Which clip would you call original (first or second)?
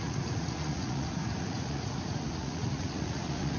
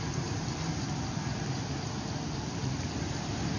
second